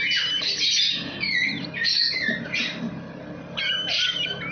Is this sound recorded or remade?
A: recorded